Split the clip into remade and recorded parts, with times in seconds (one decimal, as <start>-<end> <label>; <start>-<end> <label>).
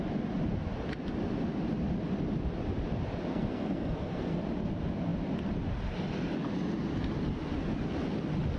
0.0-3.3 recorded; 3.3-4.4 remade; 4.4-8.6 recorded